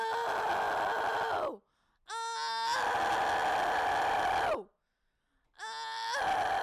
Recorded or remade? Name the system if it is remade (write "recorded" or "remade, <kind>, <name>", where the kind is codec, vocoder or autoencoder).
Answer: recorded